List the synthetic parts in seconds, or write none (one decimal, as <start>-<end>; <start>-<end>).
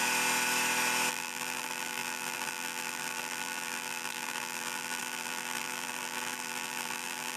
1.1-7.4